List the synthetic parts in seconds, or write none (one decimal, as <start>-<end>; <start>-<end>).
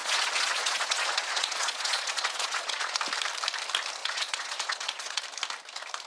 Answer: 0.0-3.0; 4.0-5.2